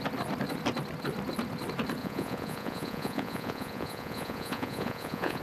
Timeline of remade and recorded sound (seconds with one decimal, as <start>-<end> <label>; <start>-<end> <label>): 0.0-2.0 recorded; 2.0-5.4 remade